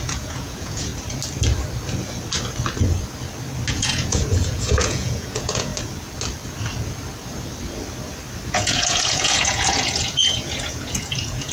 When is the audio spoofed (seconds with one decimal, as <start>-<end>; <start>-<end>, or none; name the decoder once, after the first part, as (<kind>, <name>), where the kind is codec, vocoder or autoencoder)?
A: 0.0-0.9 (vocoder, Vocos); 3.7-5.7; 8.5-11.5

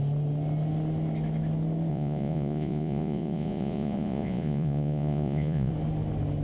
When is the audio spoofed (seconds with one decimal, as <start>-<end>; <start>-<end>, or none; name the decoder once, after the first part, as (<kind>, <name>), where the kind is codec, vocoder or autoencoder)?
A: 1.9-5.7 (vocoder, Vocos)